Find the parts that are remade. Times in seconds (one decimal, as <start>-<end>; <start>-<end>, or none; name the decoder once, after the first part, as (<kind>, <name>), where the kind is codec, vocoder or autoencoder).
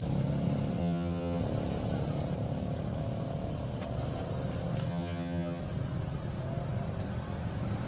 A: 0.8-1.4 (vocoder, HiFi-GAN); 4.9-5.6